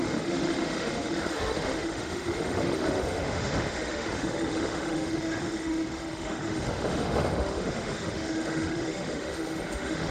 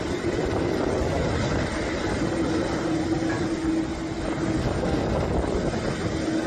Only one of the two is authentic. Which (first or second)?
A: second